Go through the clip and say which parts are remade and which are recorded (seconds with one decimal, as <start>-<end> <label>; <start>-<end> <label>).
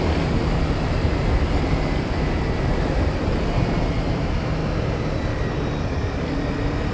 0.0-0.4 recorded; 0.4-1.7 remade; 1.7-6.9 recorded